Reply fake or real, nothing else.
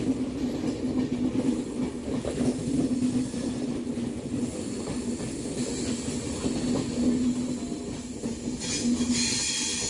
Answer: real